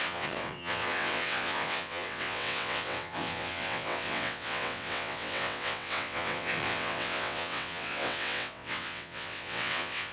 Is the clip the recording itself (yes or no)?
no